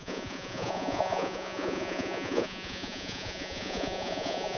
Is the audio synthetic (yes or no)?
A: yes